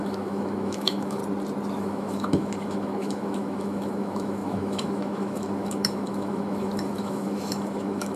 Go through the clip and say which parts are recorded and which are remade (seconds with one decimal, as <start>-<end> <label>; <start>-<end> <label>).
0.0-1.2 remade; 1.2-1.8 recorded; 1.8-8.2 remade